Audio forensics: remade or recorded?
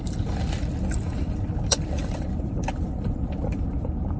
remade